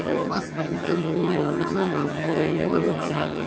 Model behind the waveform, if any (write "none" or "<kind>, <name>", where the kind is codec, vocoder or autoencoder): vocoder, HiFi-GAN